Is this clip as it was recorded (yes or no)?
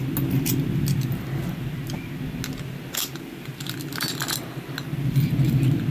yes